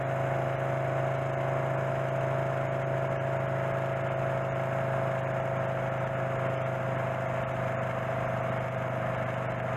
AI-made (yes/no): no